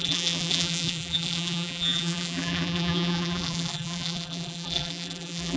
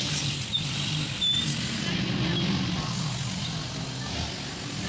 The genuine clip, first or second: second